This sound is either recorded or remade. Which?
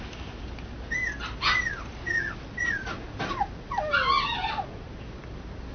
recorded